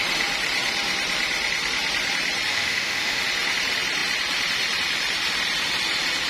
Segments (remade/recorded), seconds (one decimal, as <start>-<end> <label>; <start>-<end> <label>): 0.0-2.5 recorded; 2.5-3.2 remade; 3.2-6.3 recorded